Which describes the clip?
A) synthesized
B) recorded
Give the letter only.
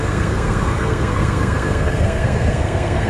A